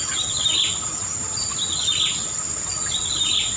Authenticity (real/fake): real